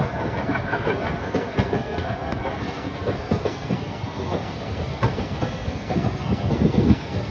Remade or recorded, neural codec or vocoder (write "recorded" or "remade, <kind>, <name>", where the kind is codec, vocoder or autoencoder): remade, codec, SNAC